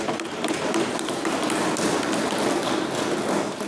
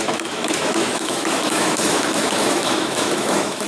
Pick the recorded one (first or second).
first